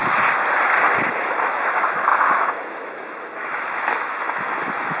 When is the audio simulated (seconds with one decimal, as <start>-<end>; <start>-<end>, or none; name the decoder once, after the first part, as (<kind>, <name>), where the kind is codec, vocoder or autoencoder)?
1.1-5.0 (autoencoder, DAC-VAE)

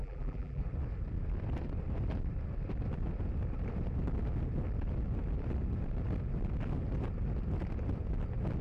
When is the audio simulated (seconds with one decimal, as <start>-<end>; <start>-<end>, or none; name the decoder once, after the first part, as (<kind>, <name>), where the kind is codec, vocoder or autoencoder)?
0.0-0.6 (vocoder, BigVGAN v2)